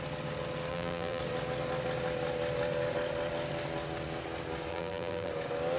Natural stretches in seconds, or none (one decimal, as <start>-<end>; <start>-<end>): 0.0-0.7; 1.2-4.7; 5.3-5.8